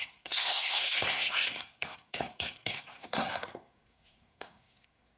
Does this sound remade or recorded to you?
remade